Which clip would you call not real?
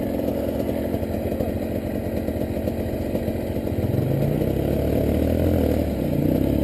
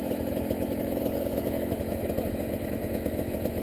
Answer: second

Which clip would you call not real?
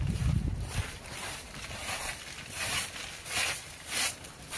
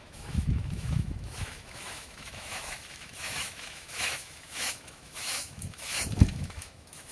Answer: second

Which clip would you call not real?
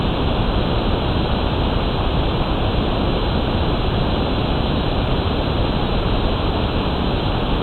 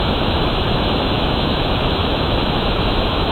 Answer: second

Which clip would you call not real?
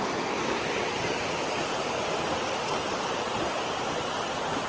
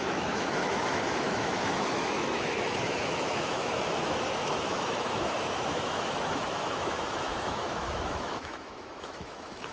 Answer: second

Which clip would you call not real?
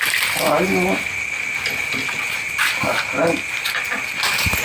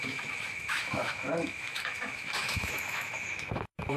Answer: second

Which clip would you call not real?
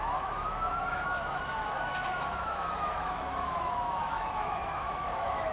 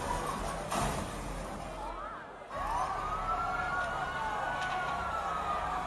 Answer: first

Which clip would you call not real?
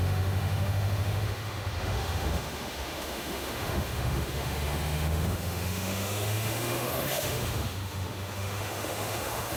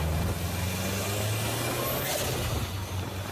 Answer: first